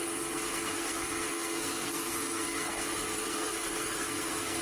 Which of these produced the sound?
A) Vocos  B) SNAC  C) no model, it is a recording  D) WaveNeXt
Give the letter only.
B